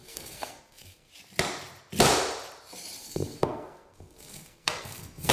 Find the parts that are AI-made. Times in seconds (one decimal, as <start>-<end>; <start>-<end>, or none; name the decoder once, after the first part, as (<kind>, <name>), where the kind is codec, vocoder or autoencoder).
0.0-1.1 (codec, SNAC); 3.0-5.3